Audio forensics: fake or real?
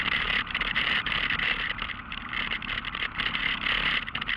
fake